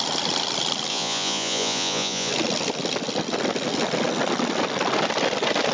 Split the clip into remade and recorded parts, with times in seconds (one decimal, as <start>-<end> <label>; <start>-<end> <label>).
0.0-0.9 recorded; 0.9-2.3 remade; 2.3-5.7 recorded